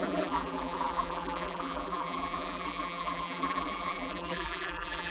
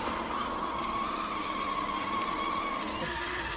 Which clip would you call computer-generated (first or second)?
first